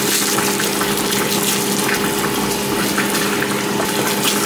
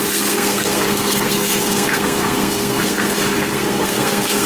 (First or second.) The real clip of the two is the first